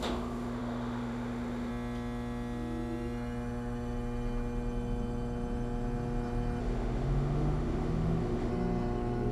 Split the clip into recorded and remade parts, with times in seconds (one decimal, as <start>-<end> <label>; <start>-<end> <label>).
0.0-1.7 remade; 1.7-6.6 recorded; 6.6-8.5 remade; 8.5-9.3 recorded